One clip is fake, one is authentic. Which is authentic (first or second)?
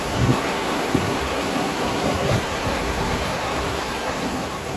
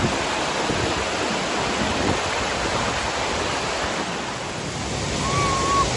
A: second